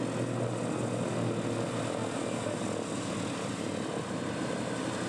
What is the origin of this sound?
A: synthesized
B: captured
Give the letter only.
B